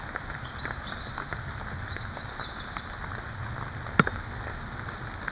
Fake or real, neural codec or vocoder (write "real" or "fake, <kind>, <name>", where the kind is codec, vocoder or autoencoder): real